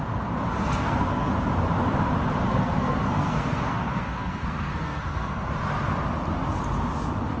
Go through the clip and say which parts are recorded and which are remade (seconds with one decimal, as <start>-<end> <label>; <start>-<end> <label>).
0.0-0.6 recorded; 0.6-1.3 remade; 1.3-2.5 recorded; 2.5-5.5 remade; 5.5-7.4 recorded